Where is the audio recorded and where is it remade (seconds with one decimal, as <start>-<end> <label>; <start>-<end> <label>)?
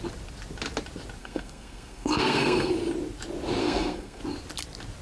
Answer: 0.0-1.2 recorded; 1.2-2.7 remade; 2.7-3.6 recorded; 3.6-4.2 remade; 4.2-5.0 recorded